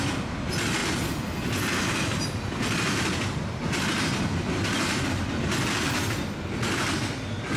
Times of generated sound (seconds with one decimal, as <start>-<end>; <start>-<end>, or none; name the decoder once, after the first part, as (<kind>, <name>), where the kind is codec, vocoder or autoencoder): none